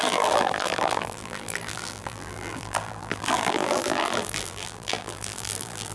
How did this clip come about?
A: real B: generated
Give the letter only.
B